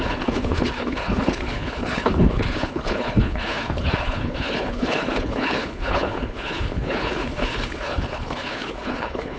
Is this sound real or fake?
fake